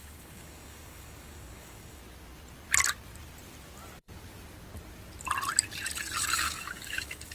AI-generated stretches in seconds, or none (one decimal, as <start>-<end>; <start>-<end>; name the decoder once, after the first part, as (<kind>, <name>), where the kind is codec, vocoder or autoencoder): 0.0-2.0 (codec, DAC); 6.2-7.3